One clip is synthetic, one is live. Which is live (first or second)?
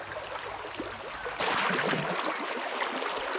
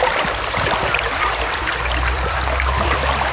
first